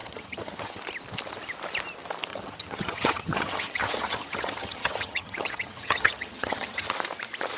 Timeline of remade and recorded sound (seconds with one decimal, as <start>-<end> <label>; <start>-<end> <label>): 0.0-0.8 remade; 0.8-2.3 recorded; 2.3-6.9 remade; 6.9-7.6 recorded